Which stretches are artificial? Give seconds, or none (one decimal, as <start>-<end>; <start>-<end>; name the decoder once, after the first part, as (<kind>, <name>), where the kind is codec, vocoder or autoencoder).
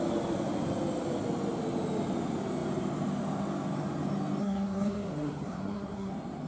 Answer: 4.4-6.1 (codec, SNAC)